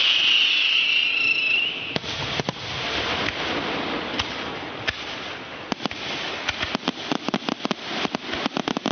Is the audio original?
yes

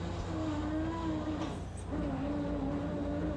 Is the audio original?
yes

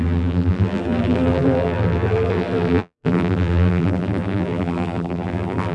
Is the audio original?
no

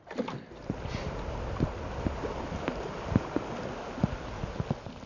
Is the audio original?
yes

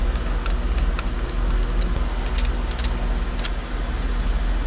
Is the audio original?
yes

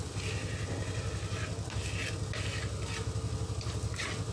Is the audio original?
yes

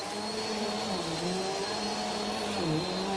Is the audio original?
yes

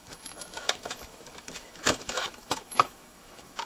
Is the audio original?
no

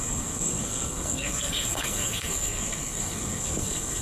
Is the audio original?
no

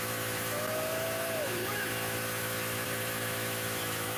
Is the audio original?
no